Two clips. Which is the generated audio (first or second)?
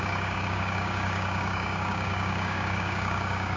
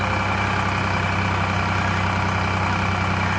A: first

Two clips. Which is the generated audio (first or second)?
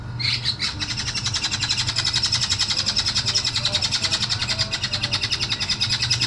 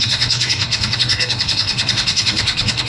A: second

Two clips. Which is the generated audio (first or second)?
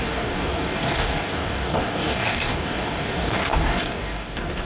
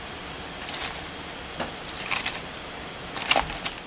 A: first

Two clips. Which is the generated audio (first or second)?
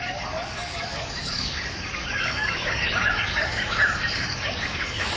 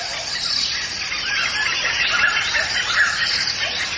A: first